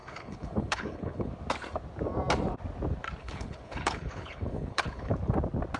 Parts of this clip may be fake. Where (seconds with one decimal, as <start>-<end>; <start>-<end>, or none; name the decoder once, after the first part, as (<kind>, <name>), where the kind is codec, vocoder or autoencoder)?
0.0-1.3 (codec, HILCodec); 3.2-5.1